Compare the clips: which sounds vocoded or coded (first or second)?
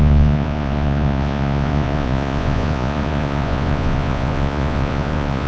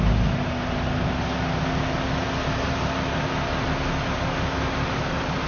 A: first